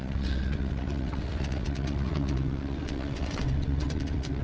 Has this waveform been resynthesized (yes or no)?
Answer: yes